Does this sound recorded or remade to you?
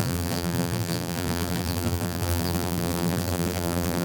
remade